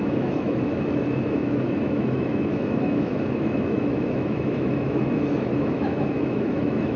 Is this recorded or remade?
remade